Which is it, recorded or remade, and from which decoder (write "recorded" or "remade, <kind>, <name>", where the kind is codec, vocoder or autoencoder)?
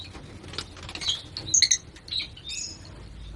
recorded